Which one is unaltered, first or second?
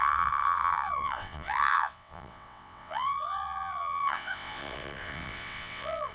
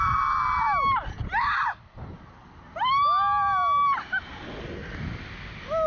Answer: second